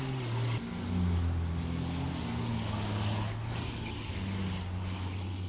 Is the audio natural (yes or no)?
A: yes